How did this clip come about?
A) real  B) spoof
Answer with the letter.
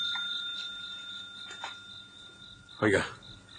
A